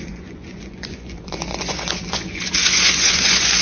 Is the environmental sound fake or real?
fake